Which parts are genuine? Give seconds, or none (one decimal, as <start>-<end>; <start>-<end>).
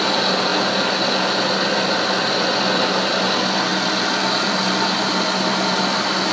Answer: 0.0-6.3